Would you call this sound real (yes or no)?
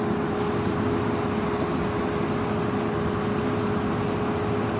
yes